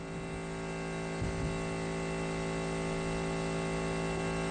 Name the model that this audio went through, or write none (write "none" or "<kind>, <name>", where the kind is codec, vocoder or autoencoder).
none